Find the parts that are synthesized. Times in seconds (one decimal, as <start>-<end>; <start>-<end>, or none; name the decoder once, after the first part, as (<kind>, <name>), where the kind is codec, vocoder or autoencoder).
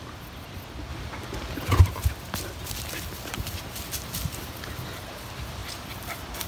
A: none